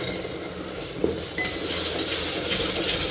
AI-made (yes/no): no